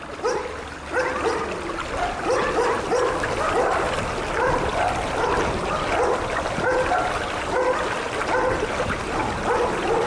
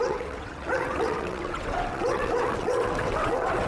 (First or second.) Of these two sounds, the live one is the first